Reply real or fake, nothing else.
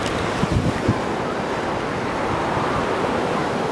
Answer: real